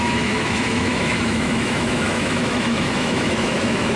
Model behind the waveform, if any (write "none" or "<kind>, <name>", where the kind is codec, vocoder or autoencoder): autoencoder, DAC-VAE